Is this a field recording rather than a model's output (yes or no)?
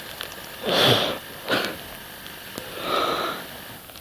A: yes